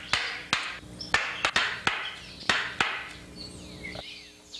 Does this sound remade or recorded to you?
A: recorded